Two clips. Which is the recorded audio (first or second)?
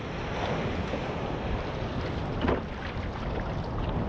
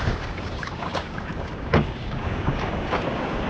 first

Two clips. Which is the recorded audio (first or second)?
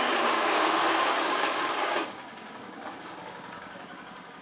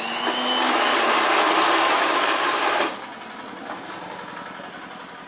second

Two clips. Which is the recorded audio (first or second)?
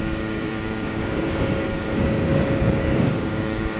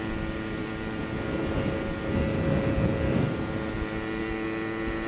second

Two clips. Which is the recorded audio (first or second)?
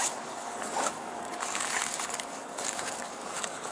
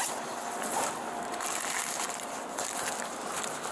second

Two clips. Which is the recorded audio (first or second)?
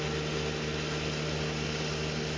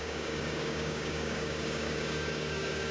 first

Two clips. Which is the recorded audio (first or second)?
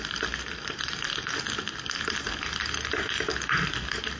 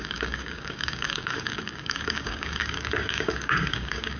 first